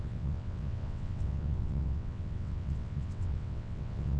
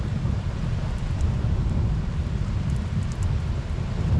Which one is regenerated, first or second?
first